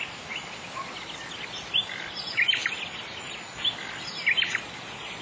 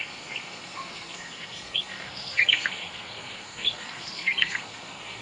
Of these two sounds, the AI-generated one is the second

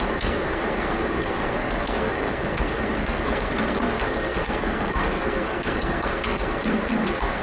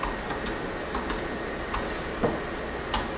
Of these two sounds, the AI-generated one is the first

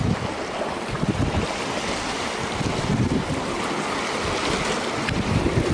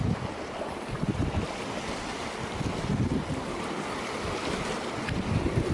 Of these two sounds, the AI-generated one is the second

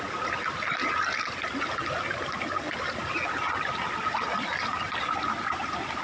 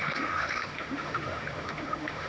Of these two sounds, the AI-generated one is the second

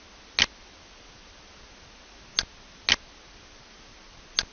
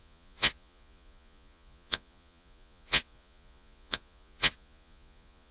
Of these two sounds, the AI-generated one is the second